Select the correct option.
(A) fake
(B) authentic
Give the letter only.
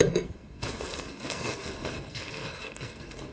A